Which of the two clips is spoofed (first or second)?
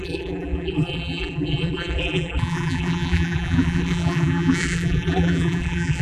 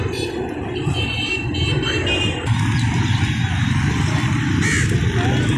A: first